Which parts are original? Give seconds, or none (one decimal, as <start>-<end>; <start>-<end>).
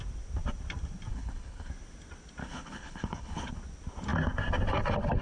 0.0-1.1; 1.7-2.4; 3.5-5.2